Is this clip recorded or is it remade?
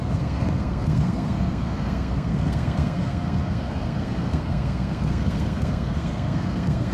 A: remade